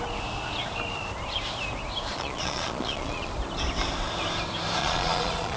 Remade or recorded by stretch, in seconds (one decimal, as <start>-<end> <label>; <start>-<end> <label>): 0.0-2.1 recorded; 2.1-3.3 remade; 3.3-4.8 recorded; 4.8-5.6 remade